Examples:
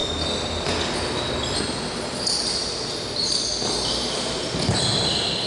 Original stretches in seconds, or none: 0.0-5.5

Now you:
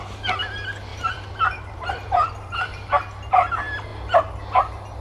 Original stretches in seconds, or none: 0.0-0.9; 2.9-5.0

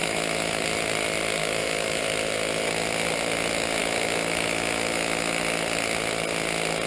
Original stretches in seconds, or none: 0.6-1.4; 2.0-3.8; 5.4-6.9

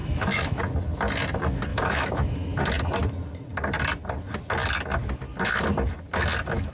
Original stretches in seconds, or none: 0.6-1.7; 2.2-6.7

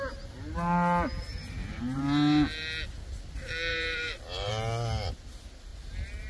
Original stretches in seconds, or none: 0.0-1.3; 2.0-3.7; 4.5-5.7

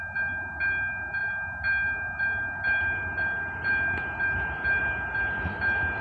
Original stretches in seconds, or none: 0.0-6.0

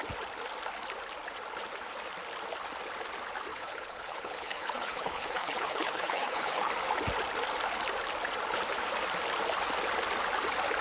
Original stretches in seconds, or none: 0.0-3.5; 6.7-10.8